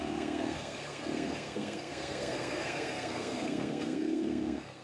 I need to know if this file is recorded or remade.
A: remade